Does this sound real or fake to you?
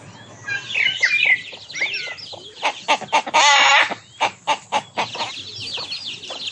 real